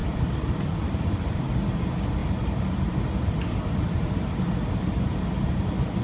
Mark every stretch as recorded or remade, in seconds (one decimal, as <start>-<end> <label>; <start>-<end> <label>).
0.0-1.5 remade; 1.5-2.2 recorded; 2.2-4.5 remade; 4.5-6.0 recorded